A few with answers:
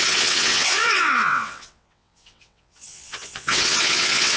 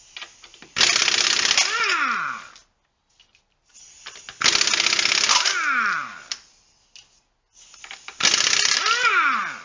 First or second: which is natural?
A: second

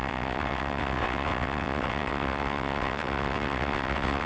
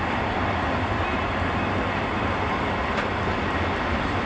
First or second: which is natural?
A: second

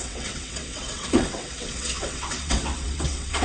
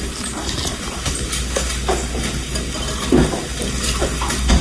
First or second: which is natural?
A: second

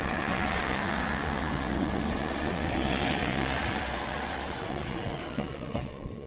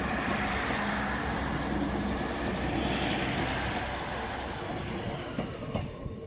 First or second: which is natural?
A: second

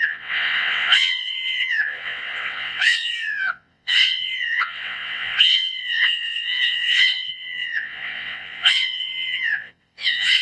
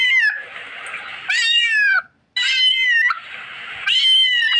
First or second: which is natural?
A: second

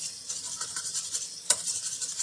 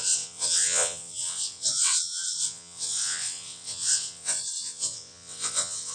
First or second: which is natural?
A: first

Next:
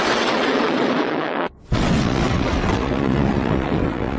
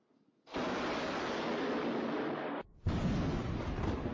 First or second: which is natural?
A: second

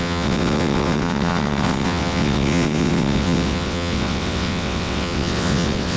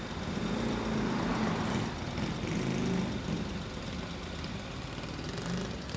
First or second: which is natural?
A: second